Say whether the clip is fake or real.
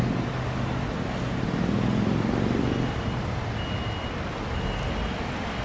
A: real